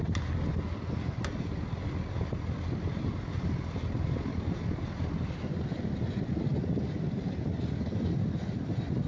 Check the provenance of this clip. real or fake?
real